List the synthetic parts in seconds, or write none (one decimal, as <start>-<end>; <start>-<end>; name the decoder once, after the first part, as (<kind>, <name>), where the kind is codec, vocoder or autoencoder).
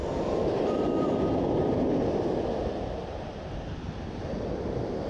0.0-3.1 (vocoder, BigVGAN v2)